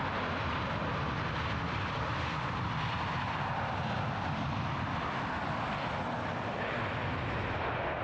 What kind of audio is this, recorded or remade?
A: recorded